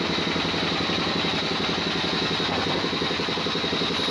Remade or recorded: recorded